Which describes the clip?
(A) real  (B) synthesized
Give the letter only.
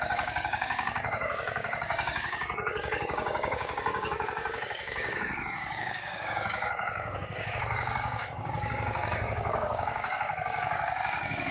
B